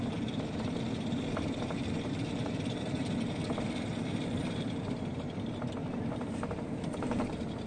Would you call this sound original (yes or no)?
no